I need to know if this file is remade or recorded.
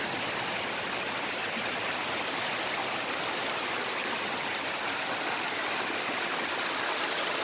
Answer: recorded